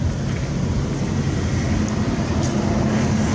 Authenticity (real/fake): real